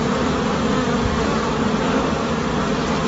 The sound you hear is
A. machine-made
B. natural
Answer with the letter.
B